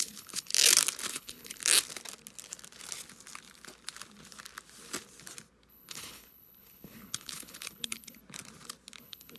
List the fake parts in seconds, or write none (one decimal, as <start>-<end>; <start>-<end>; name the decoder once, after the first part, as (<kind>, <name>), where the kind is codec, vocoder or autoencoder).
0.0-0.5 (codec, HILCodec); 1.1-1.6; 5.7-8.2; 9.0-9.4